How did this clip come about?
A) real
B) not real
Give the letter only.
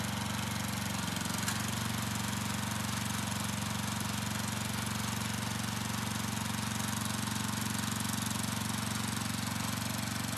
A